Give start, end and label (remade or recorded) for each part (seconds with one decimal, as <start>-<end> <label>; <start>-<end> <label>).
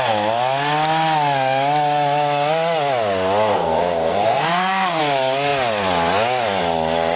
0.0-3.5 recorded; 3.5-5.0 remade; 5.0-7.2 recorded